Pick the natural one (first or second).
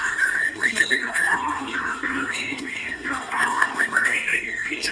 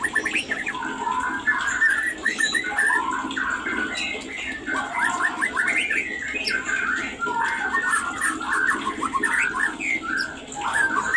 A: second